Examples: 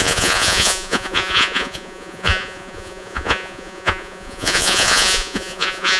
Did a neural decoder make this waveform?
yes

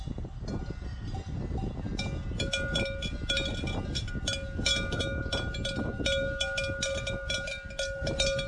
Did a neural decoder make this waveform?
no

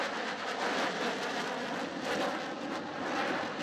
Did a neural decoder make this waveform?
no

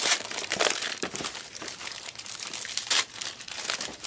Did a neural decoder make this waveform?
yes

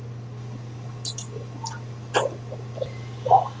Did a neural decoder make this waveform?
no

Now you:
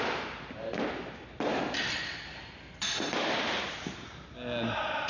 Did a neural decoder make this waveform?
no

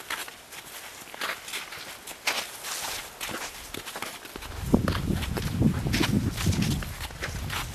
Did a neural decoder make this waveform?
no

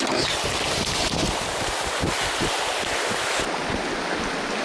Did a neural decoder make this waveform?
no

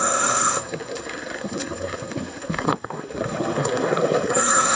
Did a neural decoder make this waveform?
yes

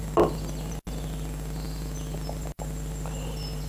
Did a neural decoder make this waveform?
no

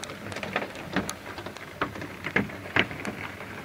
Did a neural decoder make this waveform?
yes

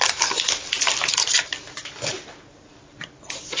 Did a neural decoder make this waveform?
no